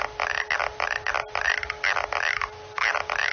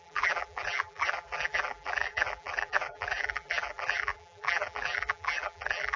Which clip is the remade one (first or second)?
second